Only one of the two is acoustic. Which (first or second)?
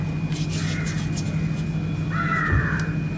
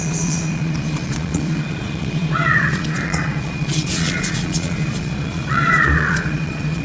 first